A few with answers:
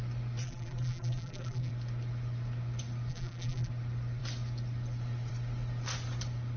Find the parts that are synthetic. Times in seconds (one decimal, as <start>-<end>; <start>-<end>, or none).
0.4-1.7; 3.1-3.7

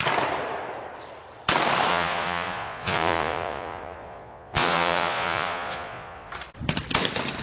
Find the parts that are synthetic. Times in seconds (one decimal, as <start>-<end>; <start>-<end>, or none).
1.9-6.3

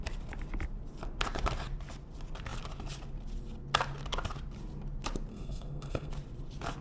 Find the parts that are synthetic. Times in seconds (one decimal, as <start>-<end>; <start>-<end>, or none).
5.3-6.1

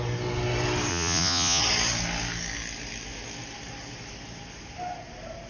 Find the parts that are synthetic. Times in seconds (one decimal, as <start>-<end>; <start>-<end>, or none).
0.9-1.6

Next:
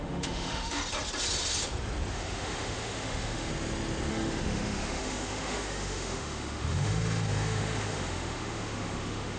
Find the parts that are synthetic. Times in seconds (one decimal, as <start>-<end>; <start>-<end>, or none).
0.0-0.8; 2.1-3.5; 4.1-9.4

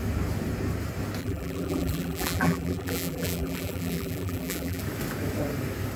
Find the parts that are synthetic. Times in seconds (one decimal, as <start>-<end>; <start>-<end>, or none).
1.2-4.8

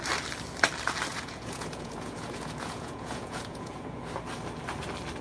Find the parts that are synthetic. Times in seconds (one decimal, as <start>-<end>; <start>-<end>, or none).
1.1-4.0